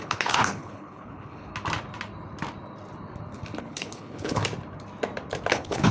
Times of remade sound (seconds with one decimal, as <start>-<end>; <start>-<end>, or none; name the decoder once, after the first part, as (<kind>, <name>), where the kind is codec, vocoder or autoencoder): 0.0-1.5 (codec, HILCodec); 3.6-4.4; 5.5-5.9